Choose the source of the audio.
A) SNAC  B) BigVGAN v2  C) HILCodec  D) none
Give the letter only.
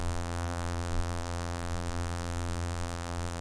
B